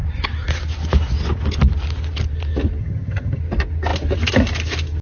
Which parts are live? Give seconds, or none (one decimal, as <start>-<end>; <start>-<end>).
0.0-2.8; 3.4-5.0